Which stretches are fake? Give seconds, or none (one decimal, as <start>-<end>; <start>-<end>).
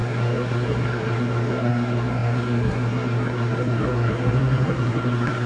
0.0-5.5